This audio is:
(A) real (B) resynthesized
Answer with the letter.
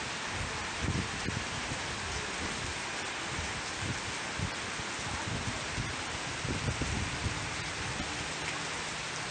A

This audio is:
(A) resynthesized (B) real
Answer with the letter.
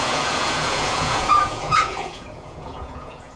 A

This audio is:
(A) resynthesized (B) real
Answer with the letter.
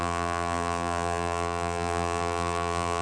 A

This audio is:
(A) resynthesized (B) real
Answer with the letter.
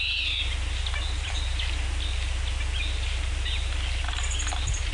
B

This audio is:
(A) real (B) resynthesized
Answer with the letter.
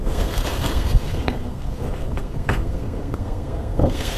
B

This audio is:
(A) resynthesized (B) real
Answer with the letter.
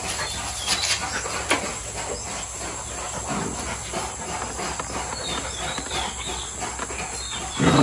B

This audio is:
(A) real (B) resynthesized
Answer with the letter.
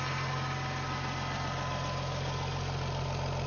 A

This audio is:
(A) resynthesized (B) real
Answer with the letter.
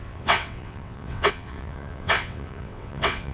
A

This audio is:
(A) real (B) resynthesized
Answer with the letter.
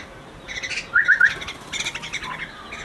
A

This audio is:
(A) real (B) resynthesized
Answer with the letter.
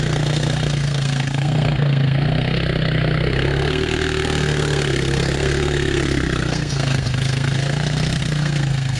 B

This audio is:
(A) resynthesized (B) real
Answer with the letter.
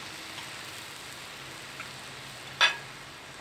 B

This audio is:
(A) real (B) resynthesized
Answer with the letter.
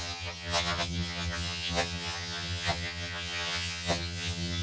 B